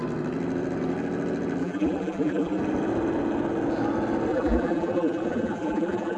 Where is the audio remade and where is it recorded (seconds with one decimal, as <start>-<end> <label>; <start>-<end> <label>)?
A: 0.0-1.6 recorded; 1.6-2.6 remade; 2.6-4.3 recorded; 4.3-6.2 remade